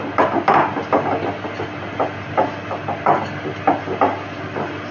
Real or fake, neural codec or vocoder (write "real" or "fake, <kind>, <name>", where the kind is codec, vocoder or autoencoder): real